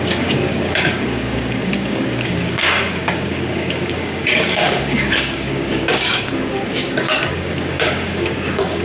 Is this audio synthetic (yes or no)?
yes